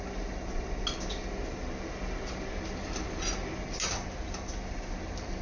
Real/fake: real